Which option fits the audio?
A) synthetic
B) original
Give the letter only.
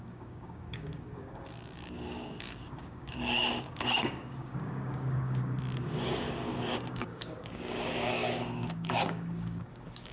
A